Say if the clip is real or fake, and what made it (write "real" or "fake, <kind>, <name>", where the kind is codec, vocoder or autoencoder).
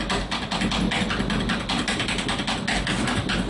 real